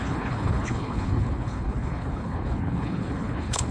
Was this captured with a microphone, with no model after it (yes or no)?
no